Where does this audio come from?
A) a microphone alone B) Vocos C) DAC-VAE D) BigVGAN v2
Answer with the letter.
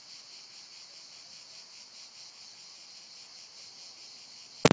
A